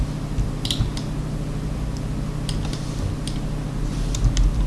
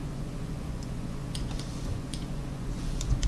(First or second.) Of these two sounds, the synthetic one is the second